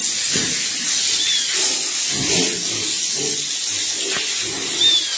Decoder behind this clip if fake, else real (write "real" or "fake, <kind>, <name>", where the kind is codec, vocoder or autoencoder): real